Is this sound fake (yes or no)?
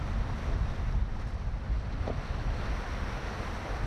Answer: no